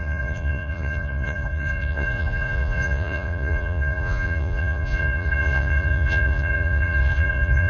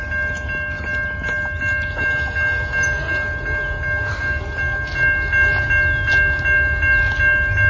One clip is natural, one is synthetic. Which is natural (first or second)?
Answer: second